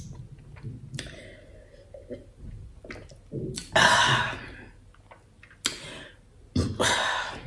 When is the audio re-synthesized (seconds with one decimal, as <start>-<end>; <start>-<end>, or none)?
none